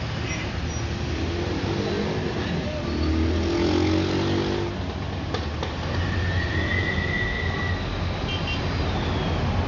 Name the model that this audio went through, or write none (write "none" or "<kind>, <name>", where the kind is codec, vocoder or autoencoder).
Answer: none